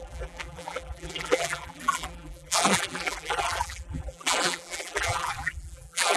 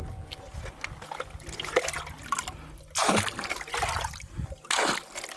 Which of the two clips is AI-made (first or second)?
first